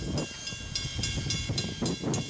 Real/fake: real